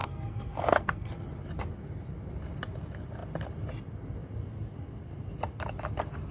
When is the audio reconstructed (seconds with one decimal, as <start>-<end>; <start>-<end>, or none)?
0.0-1.1